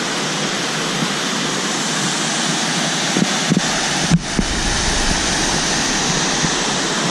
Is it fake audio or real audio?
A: real